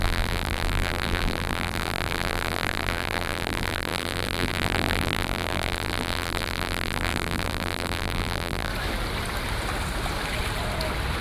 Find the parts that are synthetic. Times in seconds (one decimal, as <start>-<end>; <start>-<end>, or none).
0.0-8.7

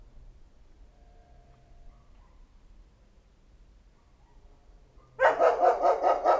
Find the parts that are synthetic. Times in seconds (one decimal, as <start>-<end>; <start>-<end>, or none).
none

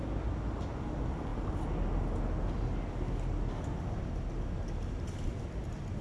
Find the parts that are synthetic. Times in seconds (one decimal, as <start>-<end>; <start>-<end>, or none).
none

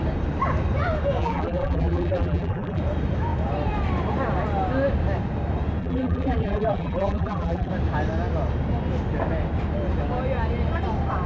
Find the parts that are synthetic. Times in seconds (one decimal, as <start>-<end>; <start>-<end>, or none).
1.2-2.8; 5.8-7.7

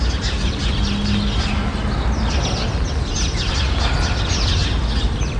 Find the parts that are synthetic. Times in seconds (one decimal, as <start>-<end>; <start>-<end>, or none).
none

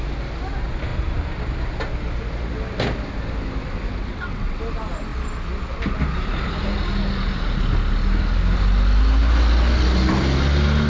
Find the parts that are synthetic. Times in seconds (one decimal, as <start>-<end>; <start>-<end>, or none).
4.0-4.6